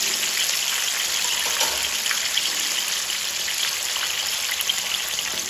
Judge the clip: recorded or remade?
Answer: recorded